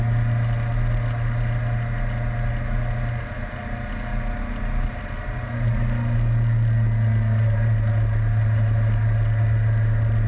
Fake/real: real